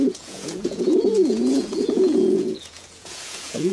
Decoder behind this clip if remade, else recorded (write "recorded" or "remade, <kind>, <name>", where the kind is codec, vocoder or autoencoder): remade, vocoder, Vocos